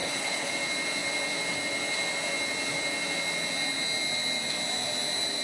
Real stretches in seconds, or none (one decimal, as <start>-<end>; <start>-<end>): 0.5-5.4